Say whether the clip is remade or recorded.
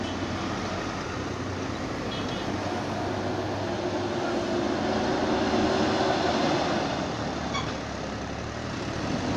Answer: recorded